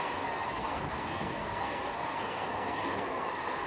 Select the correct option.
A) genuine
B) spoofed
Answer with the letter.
B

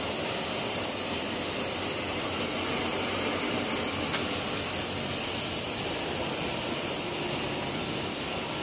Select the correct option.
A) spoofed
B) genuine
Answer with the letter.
B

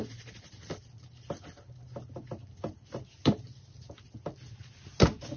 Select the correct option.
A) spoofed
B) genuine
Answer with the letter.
B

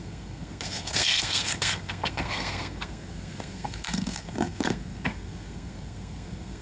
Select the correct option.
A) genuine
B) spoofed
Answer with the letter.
B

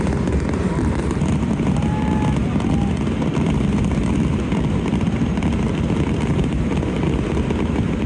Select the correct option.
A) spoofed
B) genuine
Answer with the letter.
B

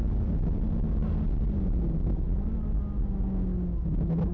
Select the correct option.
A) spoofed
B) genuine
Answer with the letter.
B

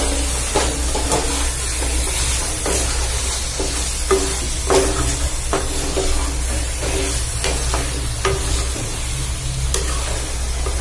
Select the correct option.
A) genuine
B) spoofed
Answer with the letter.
A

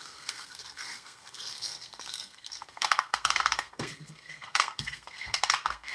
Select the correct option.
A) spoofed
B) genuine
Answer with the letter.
A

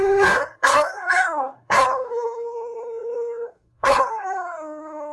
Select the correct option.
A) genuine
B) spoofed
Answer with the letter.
B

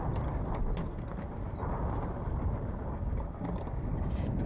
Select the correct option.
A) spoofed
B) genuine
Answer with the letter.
B